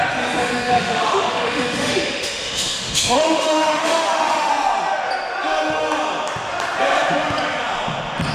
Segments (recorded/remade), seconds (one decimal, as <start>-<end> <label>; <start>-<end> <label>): 0.0-0.4 recorded; 0.4-4.5 remade; 4.5-8.3 recorded